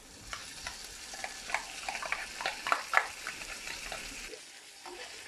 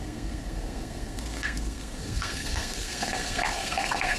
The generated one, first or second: second